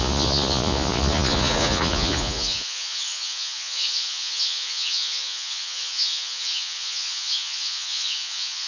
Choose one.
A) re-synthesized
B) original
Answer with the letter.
A